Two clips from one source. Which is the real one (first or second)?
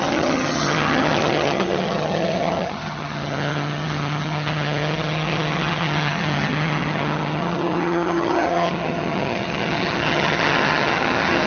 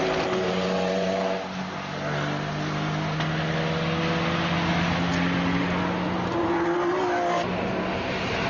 second